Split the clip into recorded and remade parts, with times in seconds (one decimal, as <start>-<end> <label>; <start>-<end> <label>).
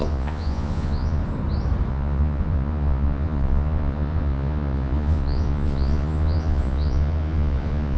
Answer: 0.0-1.2 remade; 1.2-1.9 recorded; 1.9-8.0 remade